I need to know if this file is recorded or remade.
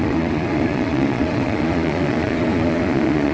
remade